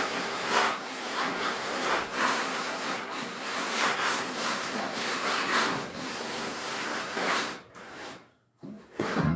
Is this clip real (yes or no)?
no